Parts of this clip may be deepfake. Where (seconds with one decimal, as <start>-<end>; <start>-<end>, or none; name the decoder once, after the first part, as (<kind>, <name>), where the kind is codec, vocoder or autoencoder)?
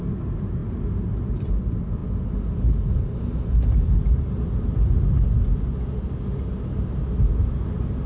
none